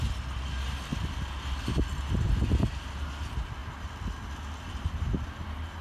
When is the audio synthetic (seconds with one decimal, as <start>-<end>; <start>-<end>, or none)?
none